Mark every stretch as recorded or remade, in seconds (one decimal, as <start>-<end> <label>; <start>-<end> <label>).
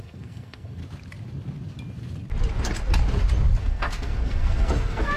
0.0-0.8 remade; 0.8-3.6 recorded; 3.6-5.2 remade